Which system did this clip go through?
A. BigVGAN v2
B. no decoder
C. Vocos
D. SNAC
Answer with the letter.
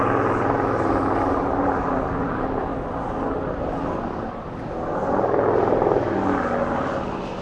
B